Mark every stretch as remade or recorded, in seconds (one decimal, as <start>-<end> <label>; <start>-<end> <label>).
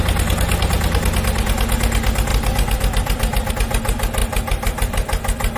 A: 0.0-2.3 recorded; 2.3-3.5 remade; 3.5-4.2 recorded; 4.2-5.6 remade